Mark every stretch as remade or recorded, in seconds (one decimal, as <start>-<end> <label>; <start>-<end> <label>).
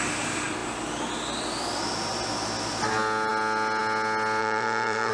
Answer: 0.0-4.4 recorded; 4.4-5.1 remade